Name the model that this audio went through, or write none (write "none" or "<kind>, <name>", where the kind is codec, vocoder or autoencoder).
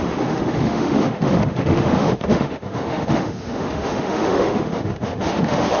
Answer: autoencoder, DAC-VAE